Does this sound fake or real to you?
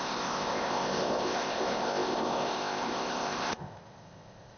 fake